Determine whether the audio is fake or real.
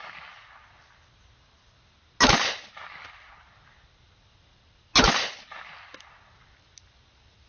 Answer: real